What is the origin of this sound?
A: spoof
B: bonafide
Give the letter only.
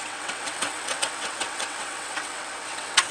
A